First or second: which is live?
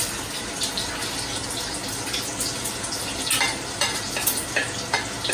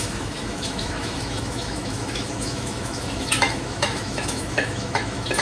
first